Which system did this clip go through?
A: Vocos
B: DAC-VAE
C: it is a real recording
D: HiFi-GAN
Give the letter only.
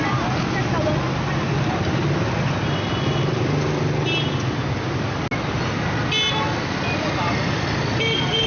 C